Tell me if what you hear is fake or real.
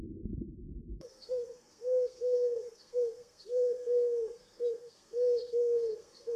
fake